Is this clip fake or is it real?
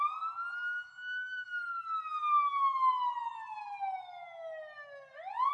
real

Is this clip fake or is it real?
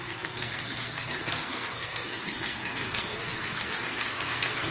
fake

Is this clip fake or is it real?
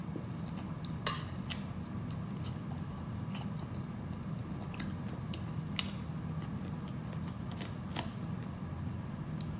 real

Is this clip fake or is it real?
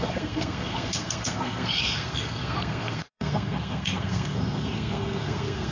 fake